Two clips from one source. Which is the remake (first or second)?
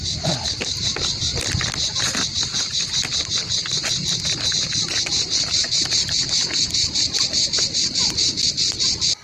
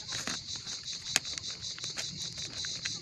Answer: first